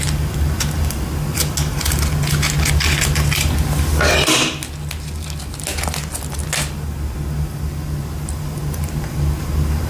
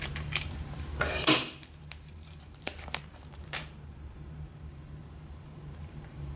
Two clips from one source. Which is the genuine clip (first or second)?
first